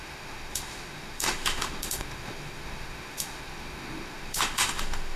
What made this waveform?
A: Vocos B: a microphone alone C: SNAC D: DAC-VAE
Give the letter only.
D